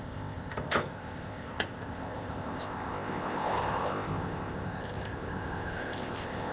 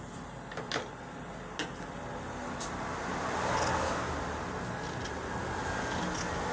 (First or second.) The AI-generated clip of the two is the first